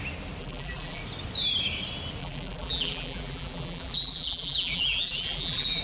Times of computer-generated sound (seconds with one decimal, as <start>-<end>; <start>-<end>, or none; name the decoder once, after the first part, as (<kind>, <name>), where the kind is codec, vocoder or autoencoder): 0.4-1.0 (vocoder, BigVGAN v2); 2.2-5.8